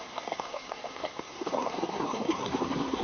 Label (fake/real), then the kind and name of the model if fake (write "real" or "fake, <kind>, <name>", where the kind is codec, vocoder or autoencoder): fake, codec, SNAC